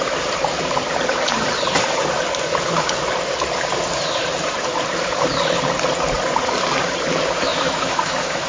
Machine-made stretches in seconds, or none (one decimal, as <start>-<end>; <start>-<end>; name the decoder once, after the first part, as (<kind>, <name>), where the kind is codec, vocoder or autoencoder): 7.5-8.5 (autoencoder, DAC-VAE)

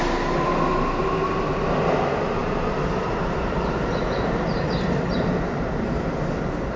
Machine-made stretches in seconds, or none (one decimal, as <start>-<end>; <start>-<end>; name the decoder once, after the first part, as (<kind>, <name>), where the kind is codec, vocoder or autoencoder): none

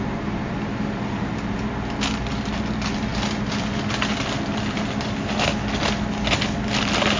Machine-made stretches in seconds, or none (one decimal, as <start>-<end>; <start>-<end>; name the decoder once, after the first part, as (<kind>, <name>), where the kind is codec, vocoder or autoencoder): none